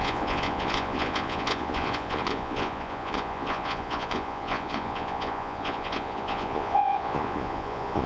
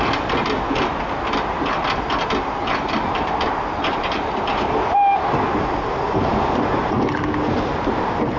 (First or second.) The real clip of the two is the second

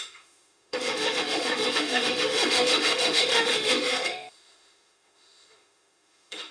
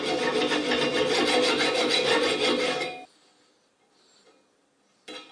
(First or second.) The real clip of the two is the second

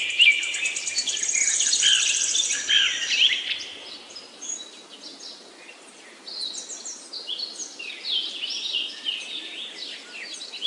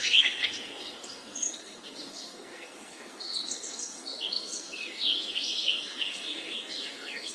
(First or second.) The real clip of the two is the first